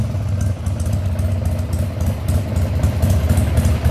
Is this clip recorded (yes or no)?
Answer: yes